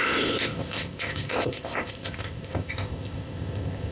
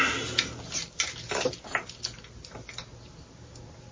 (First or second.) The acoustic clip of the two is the second